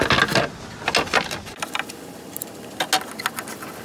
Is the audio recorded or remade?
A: recorded